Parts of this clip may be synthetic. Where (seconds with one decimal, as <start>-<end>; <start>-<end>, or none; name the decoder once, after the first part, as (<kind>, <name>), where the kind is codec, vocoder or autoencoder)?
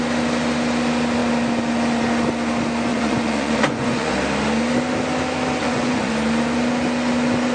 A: 2.9-4.1 (vocoder, Vocos); 5.6-6.1